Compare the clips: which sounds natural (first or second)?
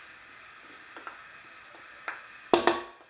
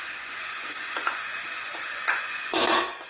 first